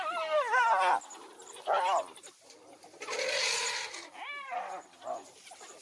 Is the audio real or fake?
real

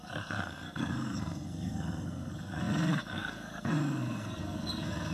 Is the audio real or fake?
fake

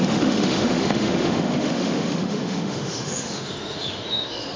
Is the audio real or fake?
fake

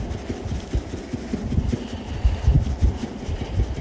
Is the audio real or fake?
fake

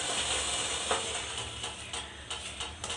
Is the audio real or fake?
real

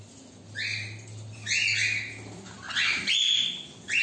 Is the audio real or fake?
real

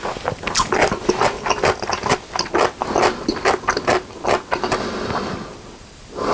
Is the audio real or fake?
real